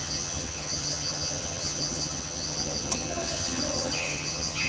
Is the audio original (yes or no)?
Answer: no